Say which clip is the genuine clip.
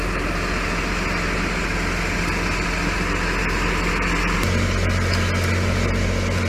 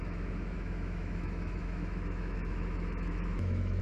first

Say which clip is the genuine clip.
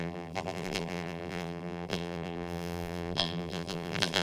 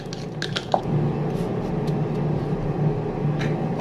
second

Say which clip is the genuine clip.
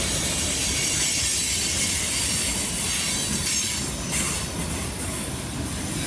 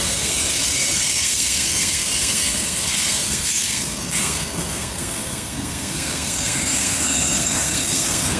first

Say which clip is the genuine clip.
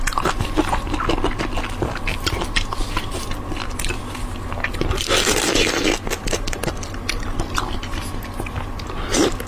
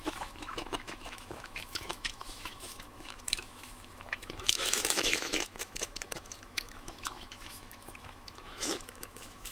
first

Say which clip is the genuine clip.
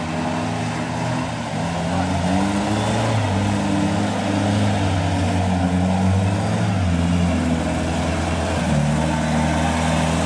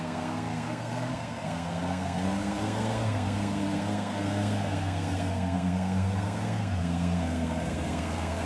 first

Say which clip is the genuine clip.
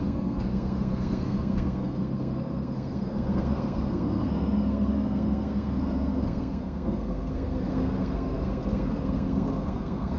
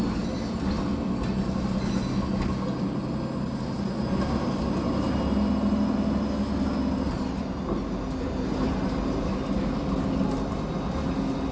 second